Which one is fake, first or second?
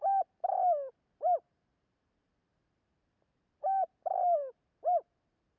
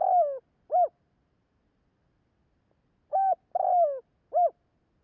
first